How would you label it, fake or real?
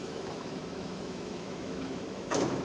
fake